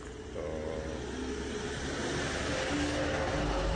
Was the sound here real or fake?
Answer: real